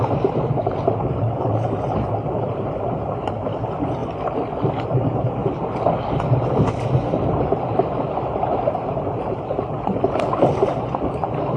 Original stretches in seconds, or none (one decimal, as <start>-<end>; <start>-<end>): 4.0-4.6; 5.4-8.5

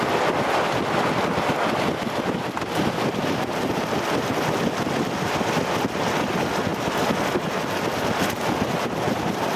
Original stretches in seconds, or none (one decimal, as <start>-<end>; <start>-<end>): 6.7-8.3